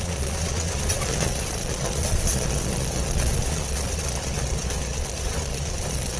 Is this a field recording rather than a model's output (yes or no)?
no